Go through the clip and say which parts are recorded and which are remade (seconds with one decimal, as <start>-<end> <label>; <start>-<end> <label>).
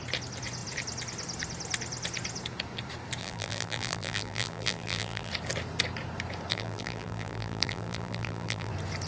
0.0-3.2 recorded; 3.2-5.3 remade; 5.3-6.5 recorded; 6.5-8.7 remade; 8.7-9.1 recorded